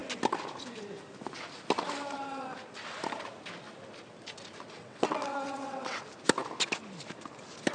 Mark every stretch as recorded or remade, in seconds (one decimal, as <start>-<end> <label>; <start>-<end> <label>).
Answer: 0.0-4.8 recorded; 4.8-6.0 remade; 6.0-7.7 recorded